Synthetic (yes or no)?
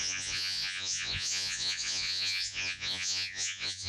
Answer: yes